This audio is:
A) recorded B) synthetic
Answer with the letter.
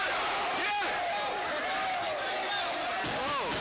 A